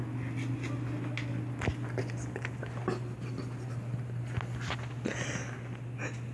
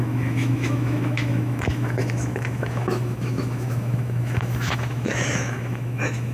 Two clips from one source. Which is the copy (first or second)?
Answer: second